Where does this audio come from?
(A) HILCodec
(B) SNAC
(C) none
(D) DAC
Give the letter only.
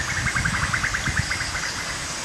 C